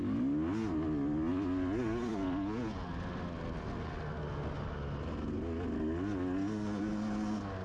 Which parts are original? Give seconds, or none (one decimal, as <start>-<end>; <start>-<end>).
0.0-7.6